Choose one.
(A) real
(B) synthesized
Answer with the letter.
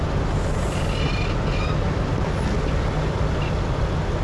A